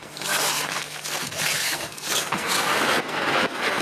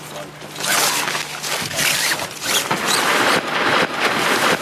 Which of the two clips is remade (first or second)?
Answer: first